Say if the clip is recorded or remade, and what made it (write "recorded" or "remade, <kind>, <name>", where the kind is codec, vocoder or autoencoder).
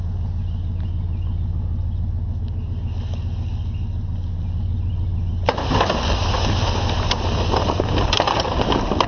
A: recorded